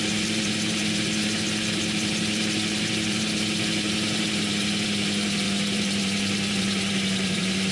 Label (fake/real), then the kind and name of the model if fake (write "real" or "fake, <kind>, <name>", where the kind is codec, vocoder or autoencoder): fake, vocoder, BigVGAN v2